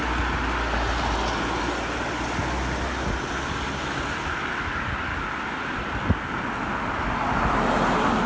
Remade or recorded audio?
recorded